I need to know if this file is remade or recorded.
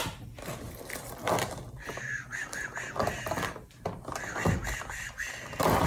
recorded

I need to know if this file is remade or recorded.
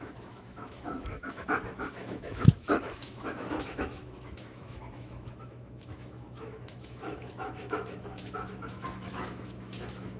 remade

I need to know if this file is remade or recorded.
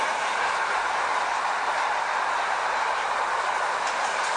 recorded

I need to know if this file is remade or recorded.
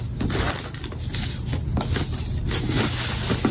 recorded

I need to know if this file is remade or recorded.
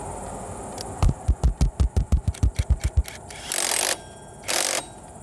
recorded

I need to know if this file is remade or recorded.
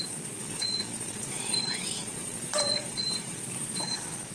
remade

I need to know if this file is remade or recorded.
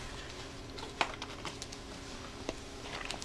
recorded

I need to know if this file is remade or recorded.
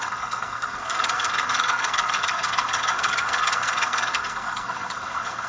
remade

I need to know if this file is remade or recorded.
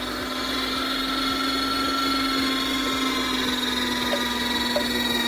recorded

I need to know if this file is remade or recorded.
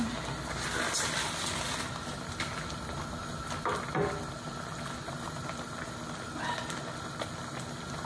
recorded